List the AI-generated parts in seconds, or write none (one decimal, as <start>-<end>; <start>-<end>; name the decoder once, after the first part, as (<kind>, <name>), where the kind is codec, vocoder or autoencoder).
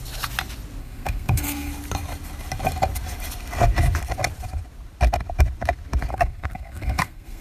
0.8-1.7 (codec, SNAC); 6.1-7.4